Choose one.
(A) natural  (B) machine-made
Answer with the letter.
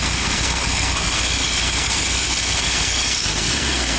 B